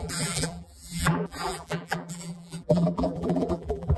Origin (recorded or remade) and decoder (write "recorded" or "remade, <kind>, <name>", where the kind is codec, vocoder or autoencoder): remade, vocoder, BigVGAN v2